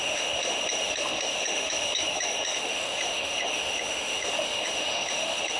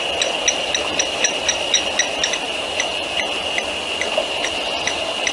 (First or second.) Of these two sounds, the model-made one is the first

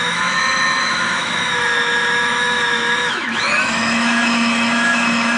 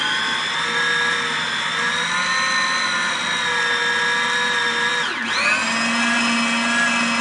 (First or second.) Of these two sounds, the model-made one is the first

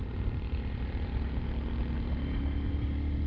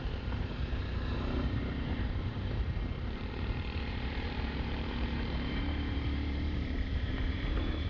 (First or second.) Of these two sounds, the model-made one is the second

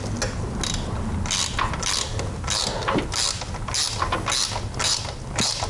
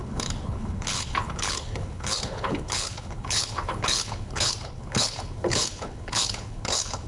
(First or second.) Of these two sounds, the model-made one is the second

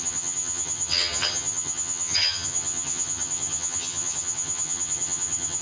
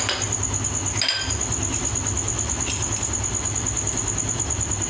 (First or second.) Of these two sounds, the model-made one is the first